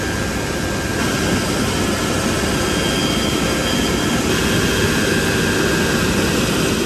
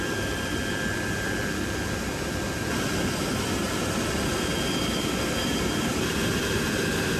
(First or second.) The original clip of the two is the first